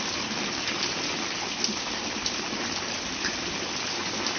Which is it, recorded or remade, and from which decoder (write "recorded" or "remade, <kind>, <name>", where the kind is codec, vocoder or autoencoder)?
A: recorded